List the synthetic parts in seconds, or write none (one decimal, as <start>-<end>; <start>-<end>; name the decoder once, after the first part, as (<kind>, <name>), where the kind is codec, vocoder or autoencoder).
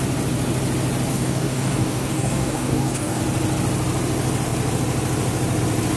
1.1-3.2 (codec, DAC)